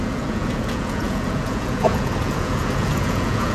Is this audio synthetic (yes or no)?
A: yes